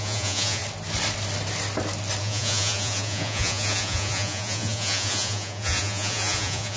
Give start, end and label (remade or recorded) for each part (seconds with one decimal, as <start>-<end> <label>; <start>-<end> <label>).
0.0-0.6 remade; 0.6-2.2 recorded; 2.2-6.8 remade